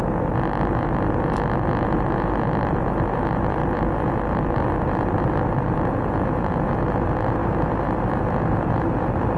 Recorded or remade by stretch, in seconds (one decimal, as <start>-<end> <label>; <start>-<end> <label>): 0.0-9.4 remade